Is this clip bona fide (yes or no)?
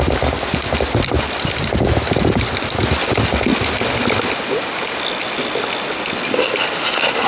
yes